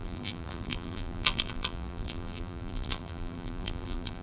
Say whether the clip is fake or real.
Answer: fake